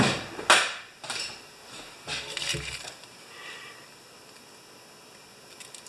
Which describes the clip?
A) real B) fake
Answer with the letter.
A